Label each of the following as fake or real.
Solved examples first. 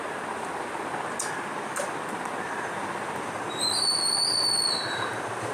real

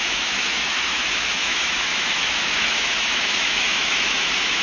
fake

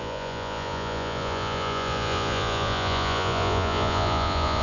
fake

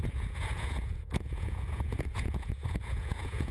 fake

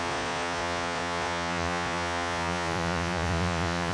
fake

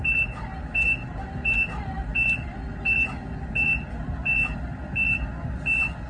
real